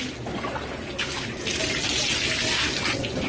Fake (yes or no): no